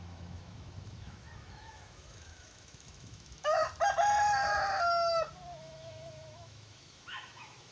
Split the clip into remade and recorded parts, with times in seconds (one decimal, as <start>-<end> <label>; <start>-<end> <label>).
0.0-3.6 remade; 3.6-5.6 recorded; 5.6-7.7 remade